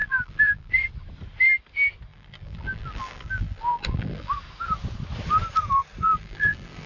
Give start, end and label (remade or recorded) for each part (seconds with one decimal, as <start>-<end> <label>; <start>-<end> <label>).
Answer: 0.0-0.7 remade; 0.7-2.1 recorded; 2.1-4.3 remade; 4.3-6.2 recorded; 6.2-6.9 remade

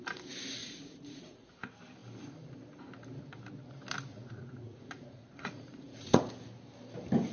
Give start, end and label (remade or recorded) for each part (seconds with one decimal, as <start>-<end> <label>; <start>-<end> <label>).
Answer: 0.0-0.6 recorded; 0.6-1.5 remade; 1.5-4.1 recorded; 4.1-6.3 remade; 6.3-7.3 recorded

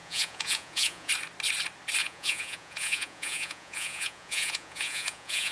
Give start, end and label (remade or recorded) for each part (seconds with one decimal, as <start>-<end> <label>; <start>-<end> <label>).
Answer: 0.0-1.1 remade; 1.1-2.0 recorded; 2.0-5.5 remade